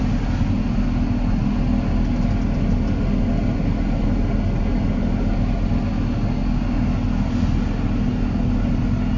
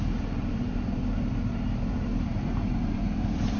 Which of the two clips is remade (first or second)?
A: second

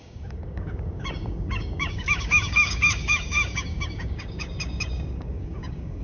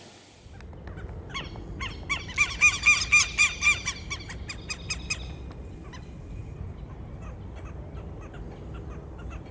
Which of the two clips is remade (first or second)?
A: first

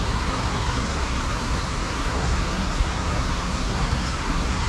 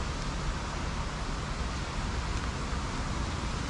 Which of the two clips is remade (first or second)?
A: first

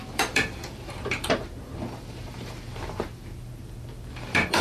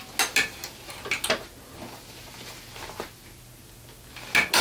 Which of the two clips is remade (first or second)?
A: first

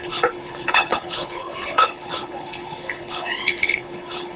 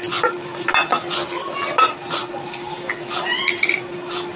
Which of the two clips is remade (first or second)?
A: first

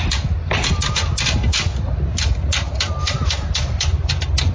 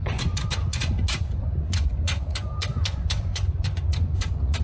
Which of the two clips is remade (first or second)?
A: second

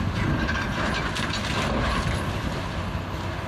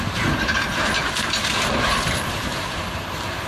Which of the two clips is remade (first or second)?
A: second